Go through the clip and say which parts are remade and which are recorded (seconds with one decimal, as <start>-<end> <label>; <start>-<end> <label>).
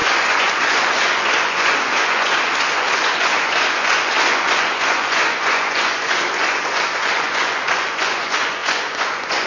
0.0-9.5 remade